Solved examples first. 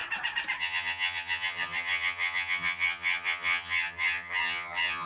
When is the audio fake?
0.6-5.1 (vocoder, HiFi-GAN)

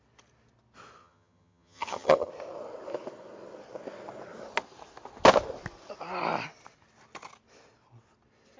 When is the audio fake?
1.0-2.3 (vocoder, HiFi-GAN)

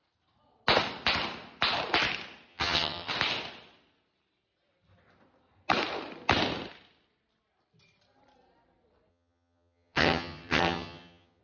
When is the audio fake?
2.5-3.1 (vocoder, HiFi-GAN); 9.1-11.4

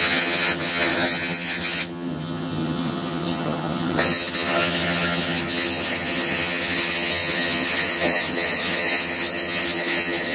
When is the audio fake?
0.0-10.3 (vocoder, HiFi-GAN)